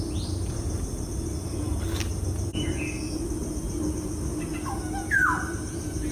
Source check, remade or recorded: recorded